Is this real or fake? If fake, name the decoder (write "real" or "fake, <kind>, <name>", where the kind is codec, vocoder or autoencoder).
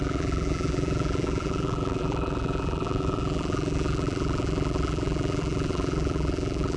fake, vocoder, BigVGAN v2